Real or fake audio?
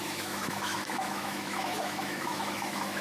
fake